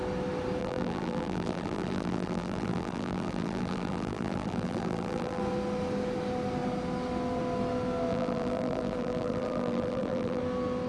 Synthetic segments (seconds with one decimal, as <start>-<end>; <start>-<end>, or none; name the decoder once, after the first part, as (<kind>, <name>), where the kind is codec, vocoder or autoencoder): 0.6-5.4 (vocoder, BigVGAN v2); 8.1-10.4